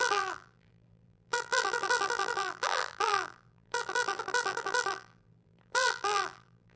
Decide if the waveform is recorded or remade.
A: remade